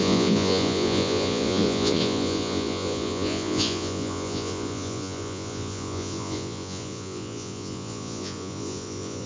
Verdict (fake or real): fake